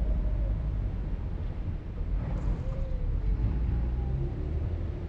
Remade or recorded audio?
remade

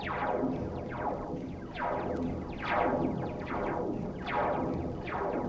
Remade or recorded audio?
recorded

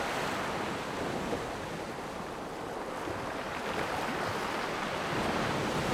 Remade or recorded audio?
recorded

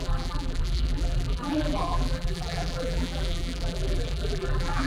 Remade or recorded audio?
remade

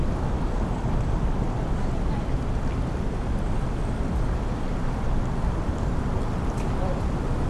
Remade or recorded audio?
recorded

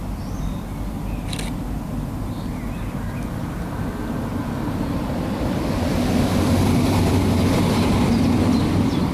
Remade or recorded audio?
recorded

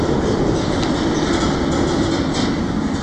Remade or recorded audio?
recorded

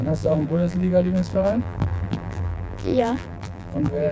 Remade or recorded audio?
remade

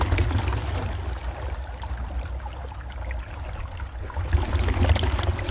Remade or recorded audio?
recorded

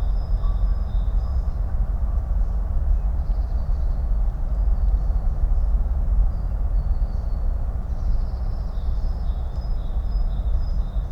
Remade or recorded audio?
recorded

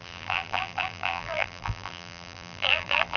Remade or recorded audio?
remade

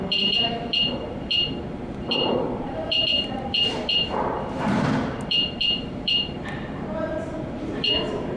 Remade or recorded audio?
remade